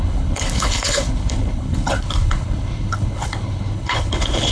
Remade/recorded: remade